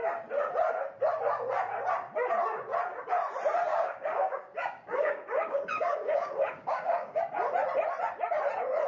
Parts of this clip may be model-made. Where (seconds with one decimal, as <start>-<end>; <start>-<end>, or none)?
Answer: 3.7-7.2